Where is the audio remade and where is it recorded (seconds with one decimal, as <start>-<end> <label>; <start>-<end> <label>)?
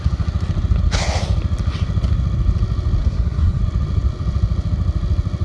0.0-3.0 recorded; 3.0-3.6 remade; 3.6-5.4 recorded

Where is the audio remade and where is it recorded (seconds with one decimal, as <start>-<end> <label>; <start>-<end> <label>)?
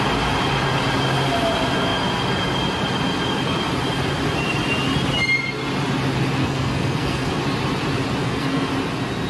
0.0-6.4 recorded; 6.4-7.4 remade; 7.4-8.2 recorded; 8.2-8.7 remade; 8.7-9.3 recorded